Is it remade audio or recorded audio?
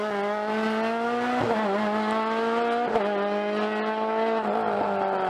recorded